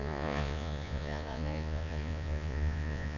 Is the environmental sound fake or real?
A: fake